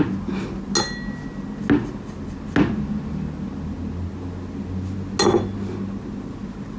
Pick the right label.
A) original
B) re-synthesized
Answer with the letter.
A